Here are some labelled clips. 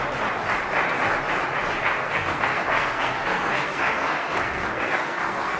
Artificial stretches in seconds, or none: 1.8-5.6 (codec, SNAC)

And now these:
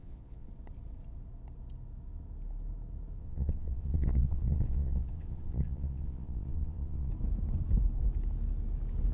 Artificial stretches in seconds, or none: 0.0-0.5 (vocoder, Vocos); 3.2-7.1

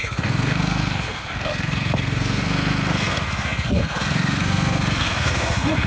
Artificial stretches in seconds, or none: 0.0-5.9 (codec, SNAC)

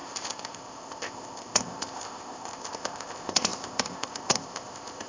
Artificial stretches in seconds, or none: 0.0-5.1 (codec, ZipCodec)

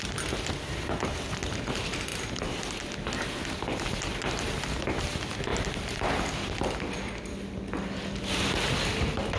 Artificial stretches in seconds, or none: none

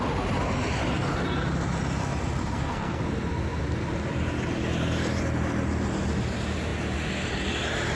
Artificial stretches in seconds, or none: 2.4-3.0 (codec, SNAC)

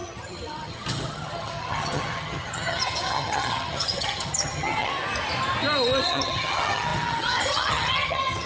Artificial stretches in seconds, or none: 0.0-4.9 (vocoder, HiFi-GAN); 6.0-8.5